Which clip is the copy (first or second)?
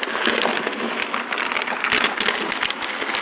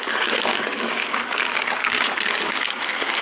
second